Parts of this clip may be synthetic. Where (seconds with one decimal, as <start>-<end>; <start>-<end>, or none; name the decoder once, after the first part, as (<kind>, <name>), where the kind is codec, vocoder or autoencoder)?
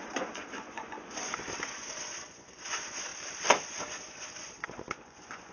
0.0-3.1 (vocoder, Vocos); 3.7-5.5